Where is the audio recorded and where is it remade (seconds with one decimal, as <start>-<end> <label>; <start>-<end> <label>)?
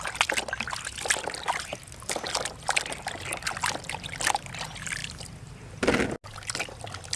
0.0-5.0 recorded; 5.0-5.5 remade; 5.5-7.2 recorded